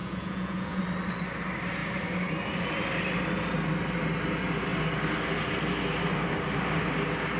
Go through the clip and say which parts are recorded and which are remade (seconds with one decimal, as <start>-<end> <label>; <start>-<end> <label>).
0.0-0.8 remade; 0.8-7.4 recorded